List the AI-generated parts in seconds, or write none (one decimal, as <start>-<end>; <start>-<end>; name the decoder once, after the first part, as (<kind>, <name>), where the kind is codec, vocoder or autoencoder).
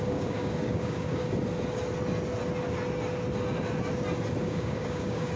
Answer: 0.0-1.2 (codec, DAC); 4.4-5.4